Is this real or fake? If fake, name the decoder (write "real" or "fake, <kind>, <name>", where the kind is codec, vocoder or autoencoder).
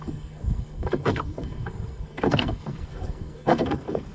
fake, codec, SNAC